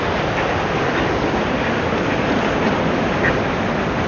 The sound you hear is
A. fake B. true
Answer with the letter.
B